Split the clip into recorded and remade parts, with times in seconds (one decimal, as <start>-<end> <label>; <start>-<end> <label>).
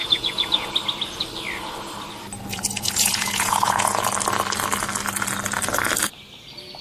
0.0-0.7 remade; 0.7-2.5 recorded; 2.5-4.0 remade; 4.0-6.8 recorded